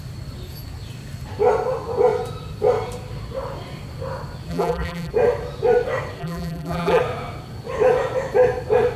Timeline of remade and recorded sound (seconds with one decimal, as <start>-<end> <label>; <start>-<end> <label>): 0.0-4.5 recorded; 4.5-5.1 remade; 5.1-6.2 recorded; 6.2-7.0 remade; 7.0-9.0 recorded